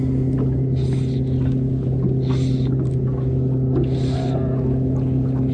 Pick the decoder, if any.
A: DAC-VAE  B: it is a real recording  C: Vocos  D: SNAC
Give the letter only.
B